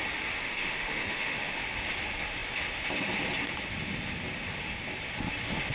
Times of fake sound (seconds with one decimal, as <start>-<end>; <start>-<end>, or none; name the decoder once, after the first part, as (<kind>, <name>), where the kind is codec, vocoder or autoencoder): 0.4-1.6 (autoencoder, DAC-VAE)